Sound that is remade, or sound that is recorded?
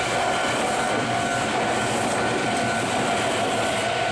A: recorded